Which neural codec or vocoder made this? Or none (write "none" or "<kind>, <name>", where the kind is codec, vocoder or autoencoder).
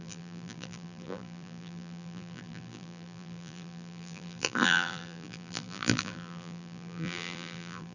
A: vocoder, BigVGAN v2